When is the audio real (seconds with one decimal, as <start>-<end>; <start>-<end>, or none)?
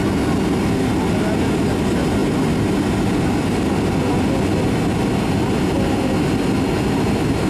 0.0-7.5